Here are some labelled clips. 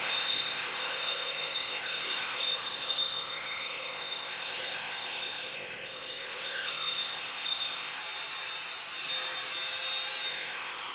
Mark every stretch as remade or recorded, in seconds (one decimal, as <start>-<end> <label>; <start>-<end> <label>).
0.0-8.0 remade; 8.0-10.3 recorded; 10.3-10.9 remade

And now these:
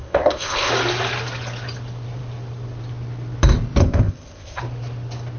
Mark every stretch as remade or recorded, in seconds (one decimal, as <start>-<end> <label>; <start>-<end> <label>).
0.0-0.7 remade; 0.7-3.8 recorded; 3.8-4.6 remade; 4.6-5.4 recorded

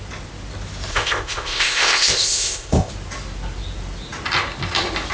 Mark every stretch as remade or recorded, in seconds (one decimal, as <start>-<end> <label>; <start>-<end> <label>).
0.0-0.9 recorded; 0.9-2.9 remade; 2.9-5.1 recorded

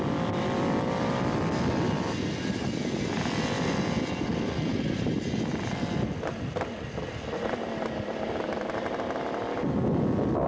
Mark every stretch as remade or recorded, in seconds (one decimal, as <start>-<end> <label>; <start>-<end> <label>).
0.0-10.5 recorded

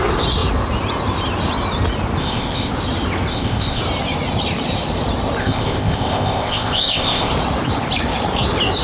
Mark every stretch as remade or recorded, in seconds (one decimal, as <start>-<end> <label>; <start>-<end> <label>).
0.0-2.2 recorded; 2.2-2.7 remade; 2.7-3.3 recorded; 3.3-3.8 remade; 3.8-5.4 recorded; 5.4-7.3 remade; 7.3-8.8 recorded

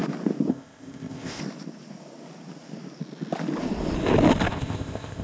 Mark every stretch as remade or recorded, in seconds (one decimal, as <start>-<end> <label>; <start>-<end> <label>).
0.0-0.5 recorded; 0.5-1.4 remade; 1.4-4.5 recorded; 4.5-5.2 remade